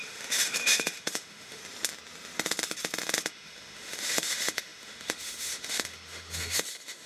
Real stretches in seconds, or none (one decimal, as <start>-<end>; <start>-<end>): 1.6-3.3